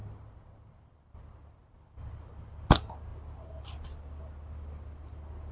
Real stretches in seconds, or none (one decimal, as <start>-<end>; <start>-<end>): 0.0-5.5

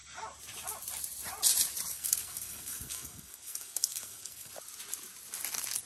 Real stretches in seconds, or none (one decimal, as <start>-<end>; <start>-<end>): 0.0-1.9; 4.5-5.8